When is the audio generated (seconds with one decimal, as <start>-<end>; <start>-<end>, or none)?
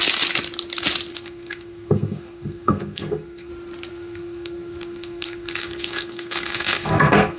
1.1-3.5; 3.9-7.4